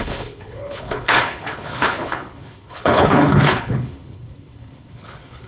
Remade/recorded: remade